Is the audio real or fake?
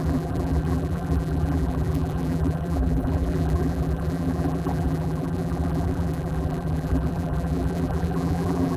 fake